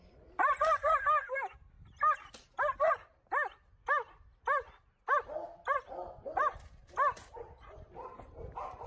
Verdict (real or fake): real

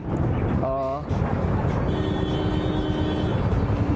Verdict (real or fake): real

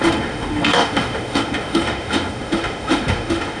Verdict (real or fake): fake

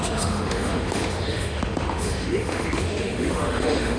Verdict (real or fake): fake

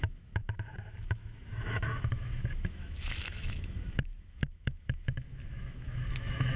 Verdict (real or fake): fake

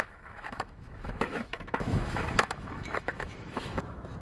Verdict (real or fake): fake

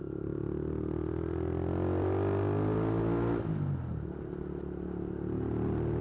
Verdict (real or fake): real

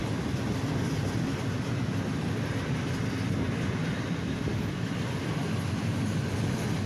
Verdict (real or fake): real